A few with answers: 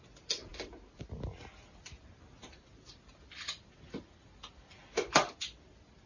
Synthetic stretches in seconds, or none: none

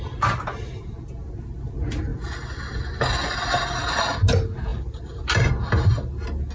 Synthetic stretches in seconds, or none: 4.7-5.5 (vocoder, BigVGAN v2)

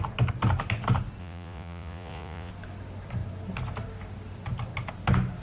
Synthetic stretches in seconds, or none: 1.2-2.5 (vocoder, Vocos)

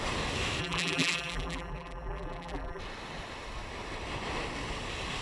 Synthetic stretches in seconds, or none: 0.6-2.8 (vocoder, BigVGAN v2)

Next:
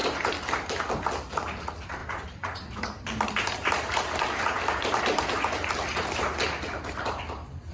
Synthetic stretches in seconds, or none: 0.0-0.8 (vocoder, BigVGAN v2); 2.0-4.6

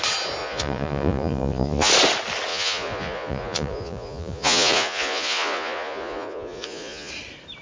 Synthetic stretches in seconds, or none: 0.4-1.9 (vocoder, Vocos); 2.5-7.1